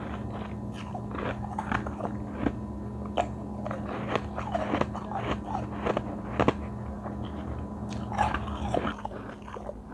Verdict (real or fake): real